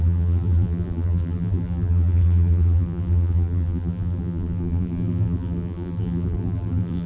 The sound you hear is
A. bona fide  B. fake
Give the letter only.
B